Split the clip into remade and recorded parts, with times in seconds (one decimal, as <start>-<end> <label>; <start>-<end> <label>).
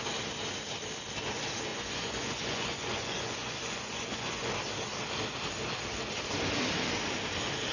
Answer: 0.0-1.7 recorded; 1.7-4.5 remade; 4.5-7.7 recorded